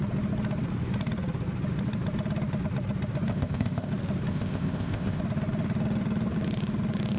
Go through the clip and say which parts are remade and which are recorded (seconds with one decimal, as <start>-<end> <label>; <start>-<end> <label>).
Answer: 0.0-3.3 recorded; 3.3-3.9 remade; 3.9-4.3 recorded; 4.3-5.2 remade; 5.2-7.2 recorded